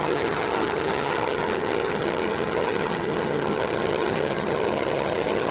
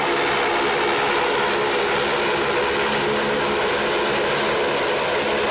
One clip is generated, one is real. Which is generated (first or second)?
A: first